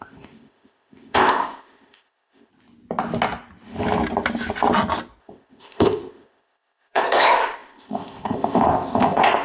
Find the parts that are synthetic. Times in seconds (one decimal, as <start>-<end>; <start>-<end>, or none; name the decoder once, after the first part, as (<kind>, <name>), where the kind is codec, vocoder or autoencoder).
0.0-2.5 (codec, ZipCodec); 5.2-9.4